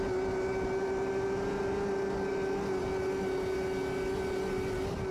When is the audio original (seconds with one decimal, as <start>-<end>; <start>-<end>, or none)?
0.0-5.1